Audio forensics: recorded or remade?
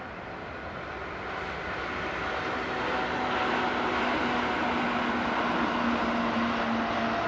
recorded